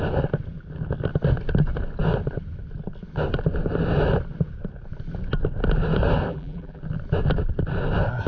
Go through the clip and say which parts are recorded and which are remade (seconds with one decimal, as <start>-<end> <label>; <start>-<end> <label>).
0.0-6.3 recorded; 6.3-6.8 remade; 6.8-8.3 recorded